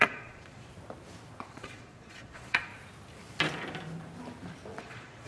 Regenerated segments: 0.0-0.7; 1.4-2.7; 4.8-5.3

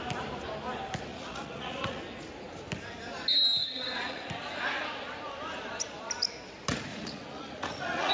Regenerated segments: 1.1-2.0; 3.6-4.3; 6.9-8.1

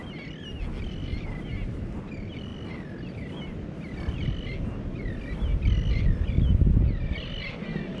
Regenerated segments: none

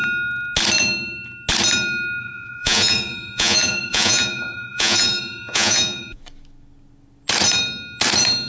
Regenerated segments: 2.2-6.2

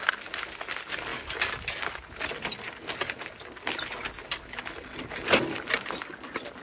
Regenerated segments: none

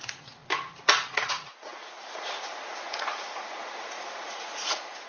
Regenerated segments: 0.0-0.4; 1.1-5.1

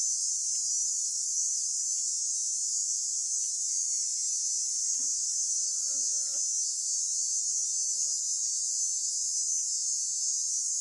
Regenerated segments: 0.8-1.8; 4.8-5.9

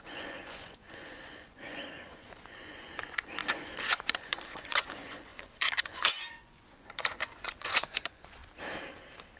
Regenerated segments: 0.0-8.4